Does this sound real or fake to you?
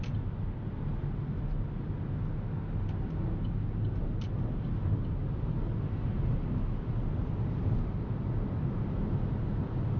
real